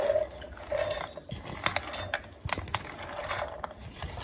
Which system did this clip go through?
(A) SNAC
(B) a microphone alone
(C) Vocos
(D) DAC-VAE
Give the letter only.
B